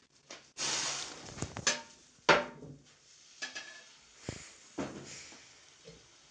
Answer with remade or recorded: recorded